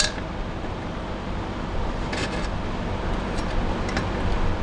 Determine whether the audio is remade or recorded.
recorded